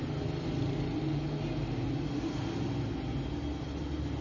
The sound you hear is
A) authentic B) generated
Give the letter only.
A